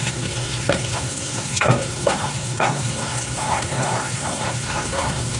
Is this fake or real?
fake